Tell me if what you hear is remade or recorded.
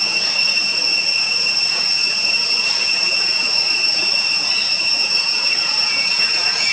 remade